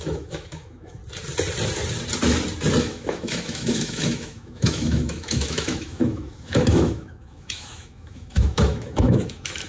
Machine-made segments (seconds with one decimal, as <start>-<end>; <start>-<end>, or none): 0.0-1.0; 2.8-9.7